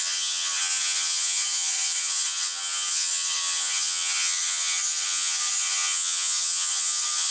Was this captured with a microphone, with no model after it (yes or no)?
no